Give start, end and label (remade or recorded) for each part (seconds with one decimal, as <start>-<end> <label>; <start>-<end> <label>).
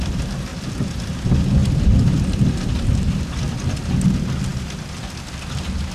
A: 0.0-0.5 recorded; 0.5-1.1 remade; 1.1-1.6 recorded; 1.6-3.8 remade; 3.8-4.5 recorded; 4.5-5.1 remade; 5.1-5.9 recorded